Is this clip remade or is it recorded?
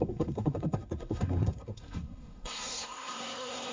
remade